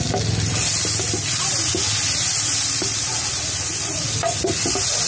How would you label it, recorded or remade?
remade